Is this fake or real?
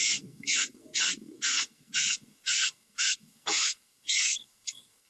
fake